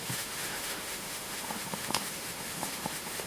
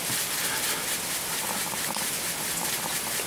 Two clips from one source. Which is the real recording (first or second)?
second